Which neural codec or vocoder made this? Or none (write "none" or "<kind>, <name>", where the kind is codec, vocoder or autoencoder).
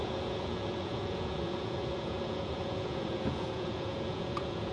vocoder, Vocos